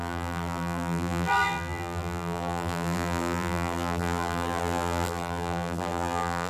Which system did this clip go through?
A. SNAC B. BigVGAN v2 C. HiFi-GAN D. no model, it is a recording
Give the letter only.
B